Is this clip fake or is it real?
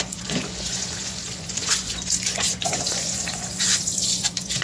fake